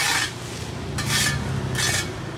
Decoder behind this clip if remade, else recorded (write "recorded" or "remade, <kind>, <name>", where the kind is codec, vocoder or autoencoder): recorded